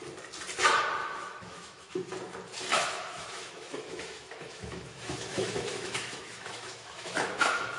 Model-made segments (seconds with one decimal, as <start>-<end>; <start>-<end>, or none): 1.0-2.1; 2.7-7.8